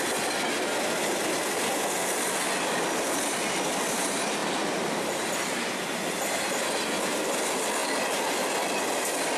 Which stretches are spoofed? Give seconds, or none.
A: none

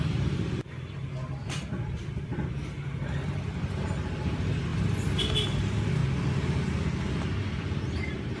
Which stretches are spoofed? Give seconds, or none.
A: 0.0-6.0 (vocoder, BigVGAN v2); 7.4-8.4

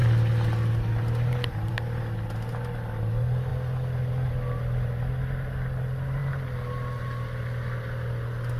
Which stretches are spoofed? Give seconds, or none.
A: none

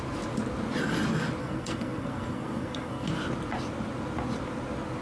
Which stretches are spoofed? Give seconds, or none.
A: 1.4-3.1 (codec, SNAC)